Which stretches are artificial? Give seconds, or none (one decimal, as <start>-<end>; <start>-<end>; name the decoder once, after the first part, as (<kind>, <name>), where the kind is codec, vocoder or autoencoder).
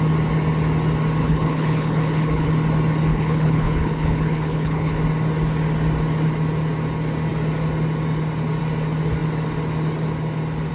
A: 1.2-2.5 (codec, HILCodec); 3.1-5.0